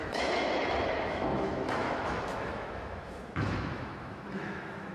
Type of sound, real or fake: fake